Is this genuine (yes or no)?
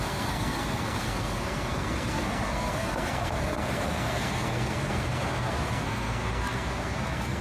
no